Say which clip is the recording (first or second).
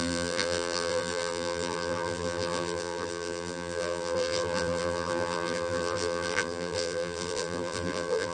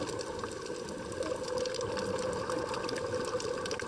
second